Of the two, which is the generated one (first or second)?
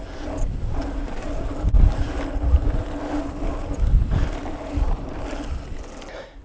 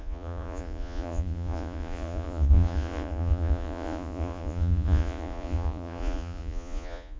second